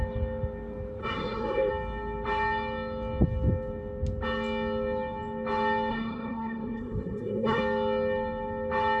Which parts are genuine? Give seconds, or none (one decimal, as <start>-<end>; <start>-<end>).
0.0-1.0; 1.7-5.9; 7.6-9.0